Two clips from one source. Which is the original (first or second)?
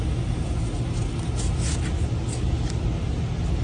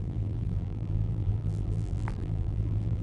first